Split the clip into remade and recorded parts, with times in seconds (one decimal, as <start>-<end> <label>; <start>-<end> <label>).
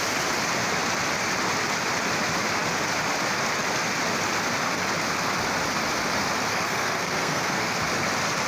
0.0-6.5 recorded; 6.5-7.8 remade; 7.8-8.5 recorded